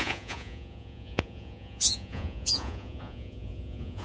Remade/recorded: remade